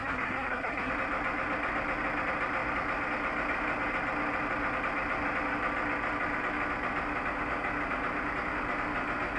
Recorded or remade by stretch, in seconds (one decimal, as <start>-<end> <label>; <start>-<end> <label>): 0.0-0.9 remade; 0.9-9.4 recorded